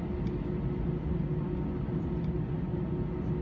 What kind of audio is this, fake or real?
real